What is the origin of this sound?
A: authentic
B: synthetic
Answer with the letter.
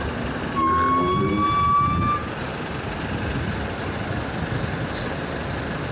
A